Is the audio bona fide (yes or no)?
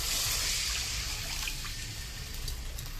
yes